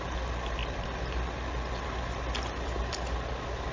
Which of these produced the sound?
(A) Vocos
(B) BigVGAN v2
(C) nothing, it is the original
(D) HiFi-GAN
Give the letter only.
C